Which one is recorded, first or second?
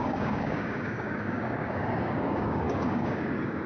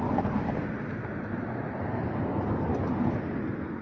second